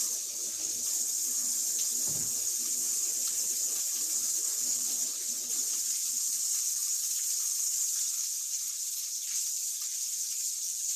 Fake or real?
real